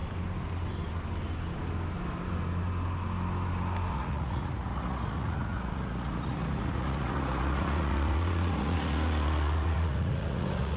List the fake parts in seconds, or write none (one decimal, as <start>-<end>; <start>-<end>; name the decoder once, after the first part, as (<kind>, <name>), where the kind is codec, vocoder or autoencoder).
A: 3.9-10.8 (vocoder, Vocos)